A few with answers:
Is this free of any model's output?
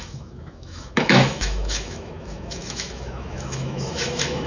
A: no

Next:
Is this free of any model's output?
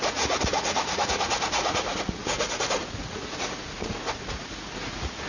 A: no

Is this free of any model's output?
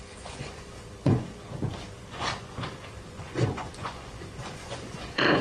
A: no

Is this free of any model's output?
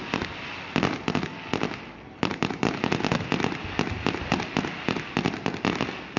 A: yes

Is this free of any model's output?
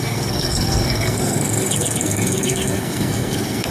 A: no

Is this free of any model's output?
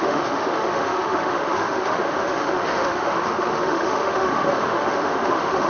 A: no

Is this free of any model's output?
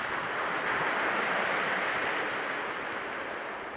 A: yes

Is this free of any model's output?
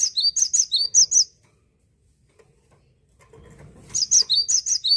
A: yes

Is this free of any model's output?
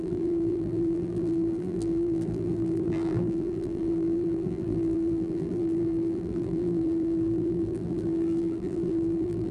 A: no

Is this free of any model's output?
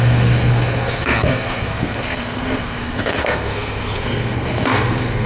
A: no